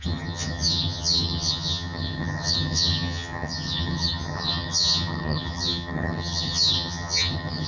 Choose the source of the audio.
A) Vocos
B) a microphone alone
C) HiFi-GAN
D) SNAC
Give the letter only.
C